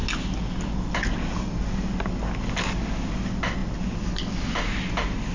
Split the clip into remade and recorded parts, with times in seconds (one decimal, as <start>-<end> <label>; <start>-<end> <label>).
0.0-5.3 recorded